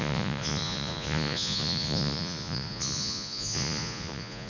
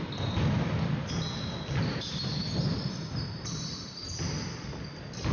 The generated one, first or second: first